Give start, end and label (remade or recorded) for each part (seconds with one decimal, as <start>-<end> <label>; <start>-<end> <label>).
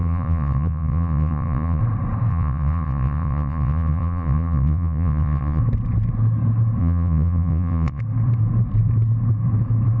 0.0-1.8 remade; 1.8-2.3 recorded; 2.3-5.6 remade; 5.6-6.8 recorded; 6.8-8.0 remade; 8.0-10.0 recorded